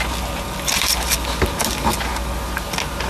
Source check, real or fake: real